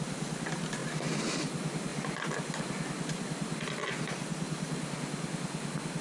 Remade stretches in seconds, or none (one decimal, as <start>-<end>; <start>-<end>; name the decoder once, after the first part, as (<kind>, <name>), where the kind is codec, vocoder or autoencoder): none